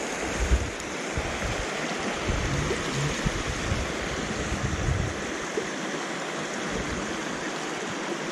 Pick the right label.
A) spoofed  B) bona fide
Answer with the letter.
B